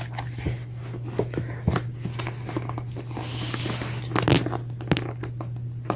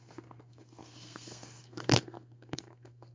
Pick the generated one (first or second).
second